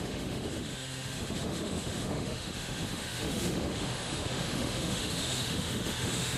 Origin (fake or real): fake